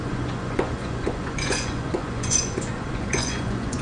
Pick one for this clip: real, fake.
fake